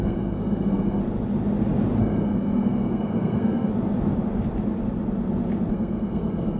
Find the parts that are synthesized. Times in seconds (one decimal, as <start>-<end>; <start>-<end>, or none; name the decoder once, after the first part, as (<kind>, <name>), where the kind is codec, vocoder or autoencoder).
0.0-1.0 (codec, SNAC); 2.0-3.7; 5.7-6.6